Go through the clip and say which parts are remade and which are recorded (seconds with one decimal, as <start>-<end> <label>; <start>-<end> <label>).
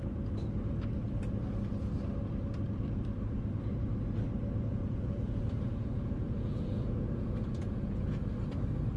0.0-4.7 recorded; 4.7-8.2 remade; 8.2-9.0 recorded